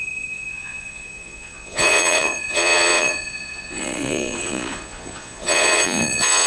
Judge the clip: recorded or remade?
remade